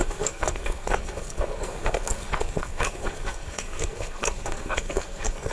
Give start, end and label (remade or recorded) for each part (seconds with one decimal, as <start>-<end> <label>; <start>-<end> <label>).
0.0-5.5 remade